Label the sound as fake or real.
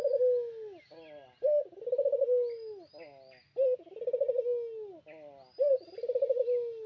real